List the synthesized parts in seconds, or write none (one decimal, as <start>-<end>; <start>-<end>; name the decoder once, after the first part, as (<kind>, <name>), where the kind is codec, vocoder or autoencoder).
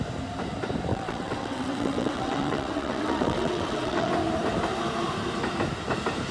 0.9-4.1 (vocoder, WaveNeXt)